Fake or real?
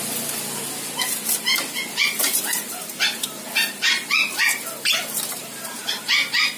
real